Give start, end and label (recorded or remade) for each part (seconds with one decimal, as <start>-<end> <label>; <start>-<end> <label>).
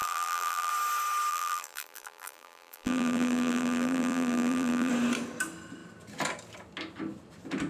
0.0-0.7 remade; 0.7-1.3 recorded; 1.3-4.9 remade; 4.9-7.7 recorded